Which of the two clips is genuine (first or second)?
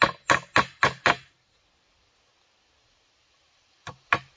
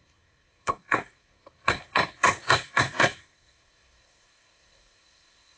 first